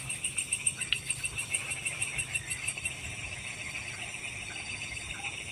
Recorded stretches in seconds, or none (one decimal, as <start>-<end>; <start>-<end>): 0.0-2.1; 4.1-5.5